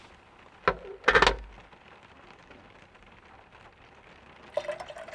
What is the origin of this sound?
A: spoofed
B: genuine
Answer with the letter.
B